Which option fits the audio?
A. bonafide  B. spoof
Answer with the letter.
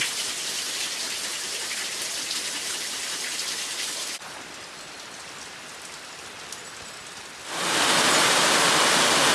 A